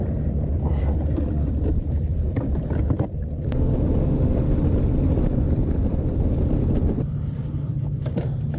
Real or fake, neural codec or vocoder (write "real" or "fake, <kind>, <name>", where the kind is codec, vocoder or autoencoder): fake, vocoder, BigVGAN v2